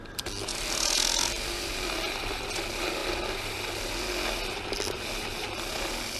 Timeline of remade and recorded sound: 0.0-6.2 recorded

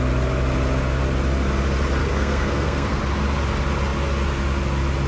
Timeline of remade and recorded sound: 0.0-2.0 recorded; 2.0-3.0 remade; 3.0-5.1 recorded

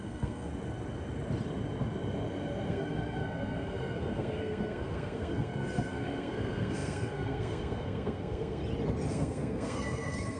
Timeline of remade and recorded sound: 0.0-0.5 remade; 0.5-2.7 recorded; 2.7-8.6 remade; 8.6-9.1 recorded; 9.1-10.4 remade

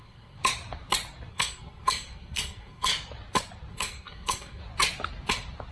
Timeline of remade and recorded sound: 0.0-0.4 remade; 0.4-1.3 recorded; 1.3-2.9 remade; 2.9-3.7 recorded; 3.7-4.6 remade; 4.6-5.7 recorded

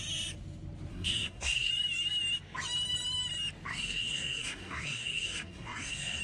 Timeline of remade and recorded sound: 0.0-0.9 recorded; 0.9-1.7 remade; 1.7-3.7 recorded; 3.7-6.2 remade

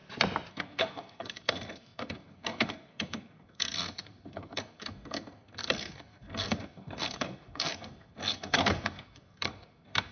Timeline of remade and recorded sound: 0.0-0.5 recorded; 0.5-10.1 remade

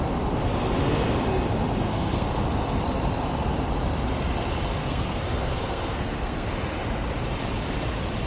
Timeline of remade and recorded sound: 0.0-1.9 recorded; 1.9-2.4 remade; 2.4-4.8 recorded; 4.8-6.5 remade; 6.5-8.3 recorded

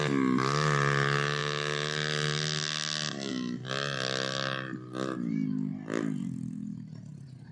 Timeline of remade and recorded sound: 0.0-7.5 recorded